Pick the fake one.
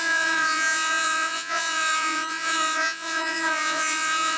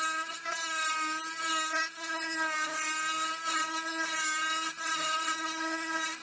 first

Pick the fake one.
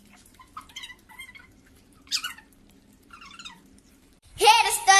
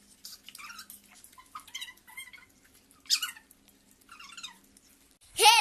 first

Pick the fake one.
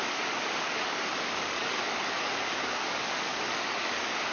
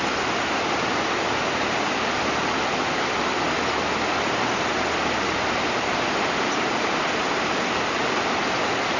first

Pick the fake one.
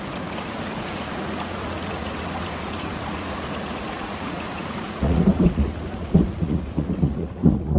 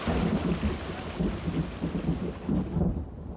first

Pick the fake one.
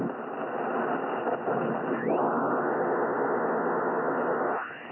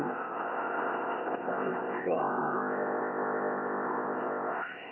second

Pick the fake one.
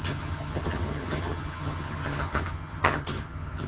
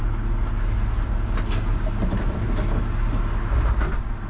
first